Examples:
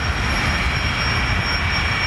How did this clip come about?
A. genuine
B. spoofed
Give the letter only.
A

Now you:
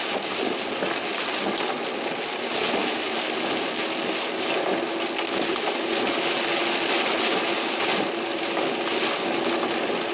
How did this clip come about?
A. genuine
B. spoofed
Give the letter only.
A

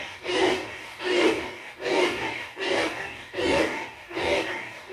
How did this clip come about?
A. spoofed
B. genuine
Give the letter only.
A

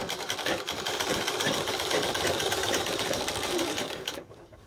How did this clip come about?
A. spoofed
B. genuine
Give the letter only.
A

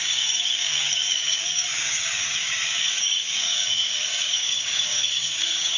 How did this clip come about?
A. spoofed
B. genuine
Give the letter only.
A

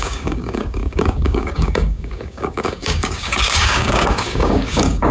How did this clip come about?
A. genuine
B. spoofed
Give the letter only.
B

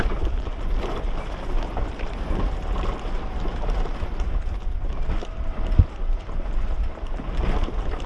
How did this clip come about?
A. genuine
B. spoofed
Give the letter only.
A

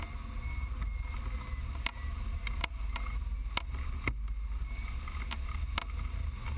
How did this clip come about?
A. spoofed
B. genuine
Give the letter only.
B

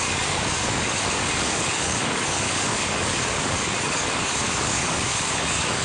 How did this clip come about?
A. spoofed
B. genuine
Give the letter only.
A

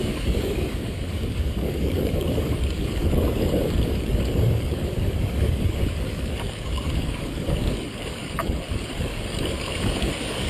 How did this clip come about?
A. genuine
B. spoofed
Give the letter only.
B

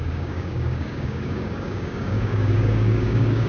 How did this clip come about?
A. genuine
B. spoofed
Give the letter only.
B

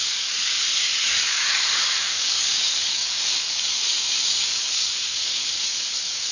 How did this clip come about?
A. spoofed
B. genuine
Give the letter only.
A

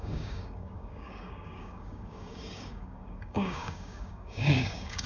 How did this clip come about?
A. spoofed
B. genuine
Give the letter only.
A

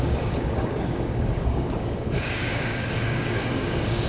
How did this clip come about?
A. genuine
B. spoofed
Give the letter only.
B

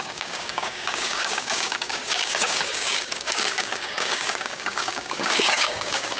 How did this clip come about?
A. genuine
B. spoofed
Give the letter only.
B